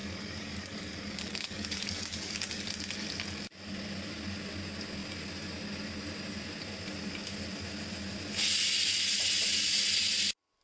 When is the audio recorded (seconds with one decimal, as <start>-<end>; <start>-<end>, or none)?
2.7-10.6